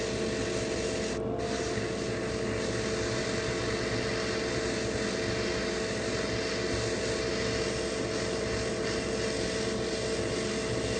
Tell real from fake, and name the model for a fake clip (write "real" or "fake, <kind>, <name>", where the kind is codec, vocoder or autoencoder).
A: real